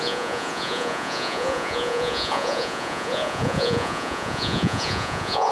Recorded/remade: remade